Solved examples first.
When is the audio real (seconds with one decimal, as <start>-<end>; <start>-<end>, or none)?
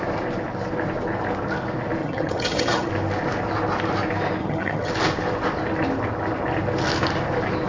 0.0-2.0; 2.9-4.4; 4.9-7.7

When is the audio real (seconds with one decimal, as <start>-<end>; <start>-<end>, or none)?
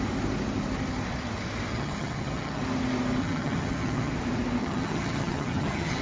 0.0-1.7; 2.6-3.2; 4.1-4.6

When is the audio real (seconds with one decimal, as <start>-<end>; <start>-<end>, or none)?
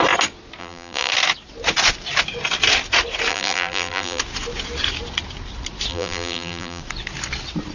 0.0-0.6; 1.1-3.3; 4.2-5.9; 6.8-7.7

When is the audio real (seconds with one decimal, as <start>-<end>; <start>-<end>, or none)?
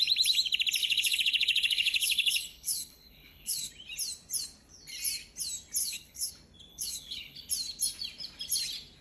0.0-0.8; 3.7-5.8; 6.3-6.7; 7.5-9.0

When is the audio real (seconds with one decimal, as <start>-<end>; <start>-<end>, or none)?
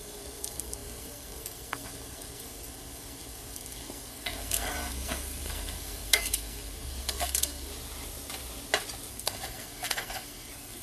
7.7-9.1